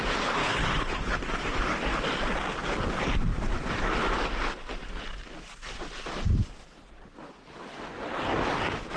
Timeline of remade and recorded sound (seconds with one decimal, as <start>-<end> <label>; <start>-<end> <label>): 0.0-0.4 recorded; 0.4-1.1 remade; 1.1-9.0 recorded

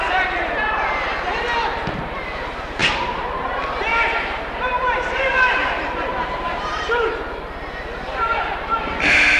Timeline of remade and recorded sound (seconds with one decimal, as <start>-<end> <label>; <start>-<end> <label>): 0.0-2.8 recorded; 2.8-3.5 remade; 3.5-3.9 recorded; 3.9-7.1 remade; 7.1-9.4 recorded

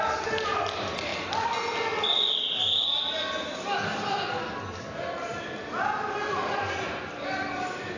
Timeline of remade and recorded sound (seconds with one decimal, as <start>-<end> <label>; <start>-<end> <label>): 0.0-1.1 recorded; 1.1-2.6 remade; 2.6-7.4 recorded; 7.4-8.0 remade

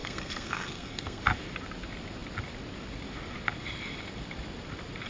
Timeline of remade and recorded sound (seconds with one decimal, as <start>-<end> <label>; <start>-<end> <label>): 0.0-1.2 remade; 1.2-5.1 recorded

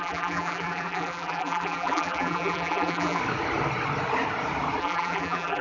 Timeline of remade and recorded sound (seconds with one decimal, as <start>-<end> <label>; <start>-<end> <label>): 0.0-3.2 remade; 3.2-4.8 recorded; 4.8-5.6 remade

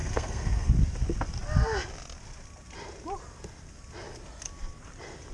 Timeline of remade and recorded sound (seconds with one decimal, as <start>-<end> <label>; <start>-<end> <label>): 0.0-0.7 remade; 0.7-5.3 recorded